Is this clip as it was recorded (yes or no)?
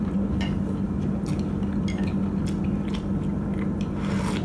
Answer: yes